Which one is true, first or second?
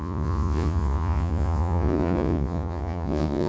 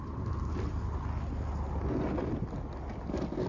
second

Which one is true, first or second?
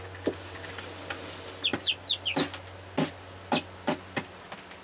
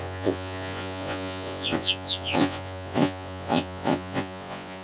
first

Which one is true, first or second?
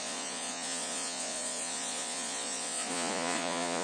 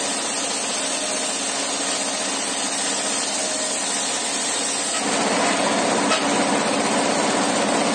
second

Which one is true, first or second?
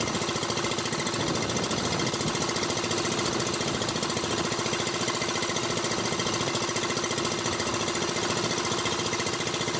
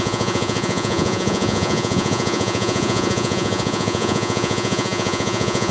first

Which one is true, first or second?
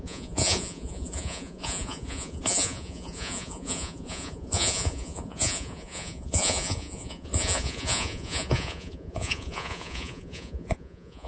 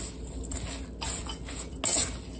second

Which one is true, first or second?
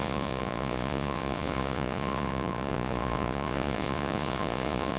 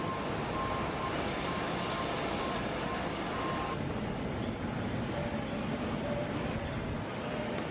second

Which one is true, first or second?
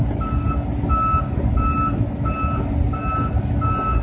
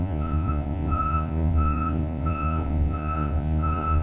first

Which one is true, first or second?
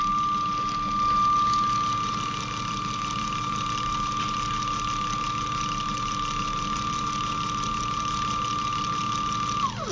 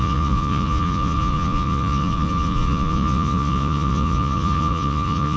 first